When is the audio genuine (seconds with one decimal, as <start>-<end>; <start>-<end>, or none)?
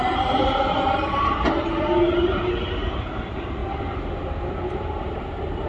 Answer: 3.6-4.2